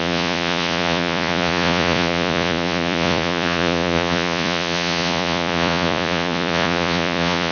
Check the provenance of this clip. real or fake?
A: fake